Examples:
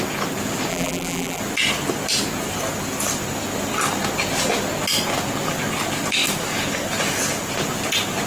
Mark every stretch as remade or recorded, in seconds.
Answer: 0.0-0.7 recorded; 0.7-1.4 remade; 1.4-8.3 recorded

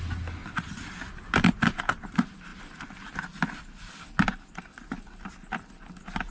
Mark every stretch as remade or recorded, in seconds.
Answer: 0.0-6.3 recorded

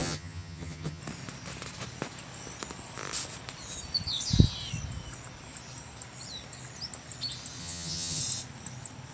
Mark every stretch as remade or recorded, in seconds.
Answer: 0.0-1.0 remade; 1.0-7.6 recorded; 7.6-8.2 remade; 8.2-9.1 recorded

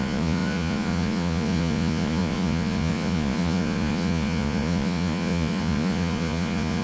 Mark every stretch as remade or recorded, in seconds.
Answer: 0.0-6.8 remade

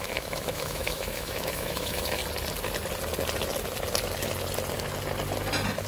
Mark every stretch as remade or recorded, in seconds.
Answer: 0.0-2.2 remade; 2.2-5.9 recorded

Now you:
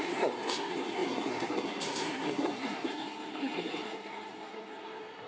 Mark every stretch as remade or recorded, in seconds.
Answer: 0.0-5.3 remade